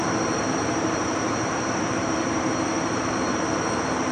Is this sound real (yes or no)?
no